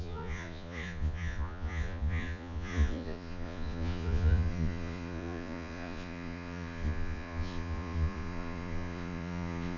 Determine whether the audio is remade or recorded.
remade